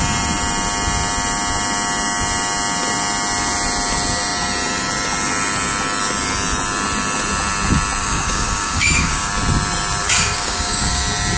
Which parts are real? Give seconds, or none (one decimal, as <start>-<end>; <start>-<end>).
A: 0.0-8.0; 9.3-10.0; 11.0-11.4